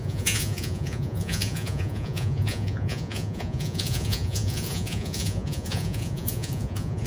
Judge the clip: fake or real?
fake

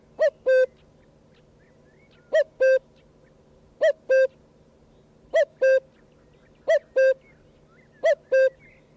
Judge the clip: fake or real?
real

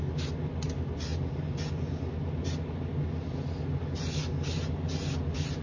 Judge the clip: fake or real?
real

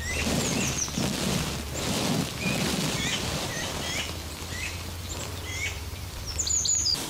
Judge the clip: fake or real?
real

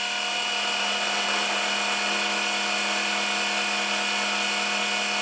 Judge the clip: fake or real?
real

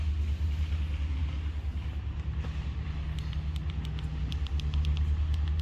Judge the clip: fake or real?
real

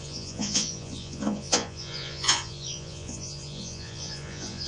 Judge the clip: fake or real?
fake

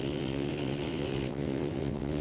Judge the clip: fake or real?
fake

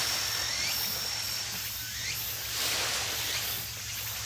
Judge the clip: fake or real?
real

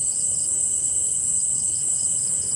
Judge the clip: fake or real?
fake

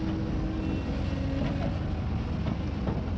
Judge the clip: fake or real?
real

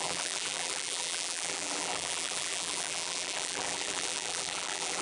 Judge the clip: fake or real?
fake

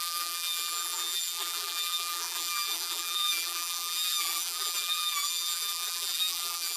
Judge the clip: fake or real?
fake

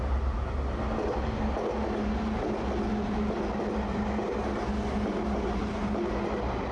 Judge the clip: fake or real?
real